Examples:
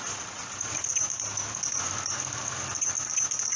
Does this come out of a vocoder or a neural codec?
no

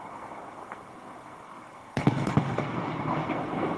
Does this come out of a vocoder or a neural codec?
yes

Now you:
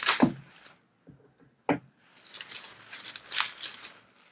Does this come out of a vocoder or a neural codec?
no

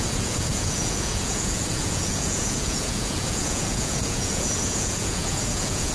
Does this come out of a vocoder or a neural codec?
yes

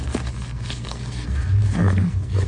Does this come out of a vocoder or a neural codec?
yes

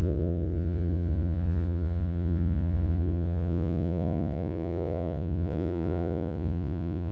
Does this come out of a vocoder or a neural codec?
yes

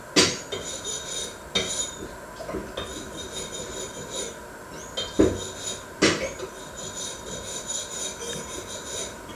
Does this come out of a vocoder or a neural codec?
no